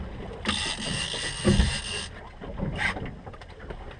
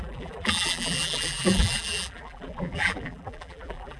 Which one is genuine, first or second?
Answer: first